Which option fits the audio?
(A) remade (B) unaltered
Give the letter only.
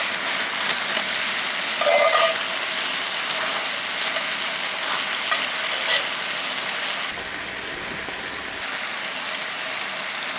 B